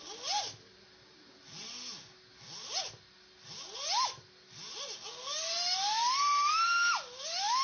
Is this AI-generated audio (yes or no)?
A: no